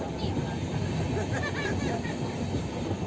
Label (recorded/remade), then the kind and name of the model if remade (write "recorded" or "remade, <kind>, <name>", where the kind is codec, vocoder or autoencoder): recorded